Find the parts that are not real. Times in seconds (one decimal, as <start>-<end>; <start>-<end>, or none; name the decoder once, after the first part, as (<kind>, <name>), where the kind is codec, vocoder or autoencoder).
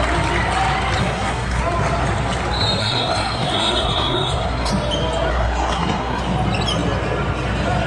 1.0-1.6 (codec, SNAC); 2.8-4.7; 5.3-6.2